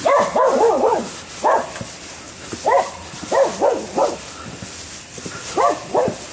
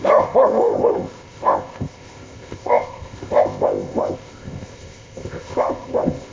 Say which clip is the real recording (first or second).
first